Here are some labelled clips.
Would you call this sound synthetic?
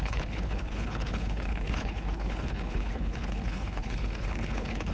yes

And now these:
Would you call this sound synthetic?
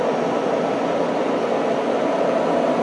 no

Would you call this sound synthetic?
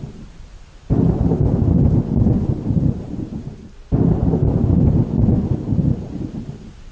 no